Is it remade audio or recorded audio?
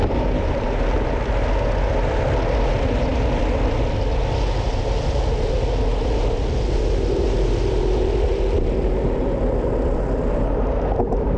recorded